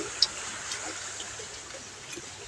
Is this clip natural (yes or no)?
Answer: yes